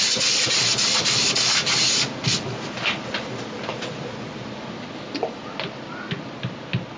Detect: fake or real real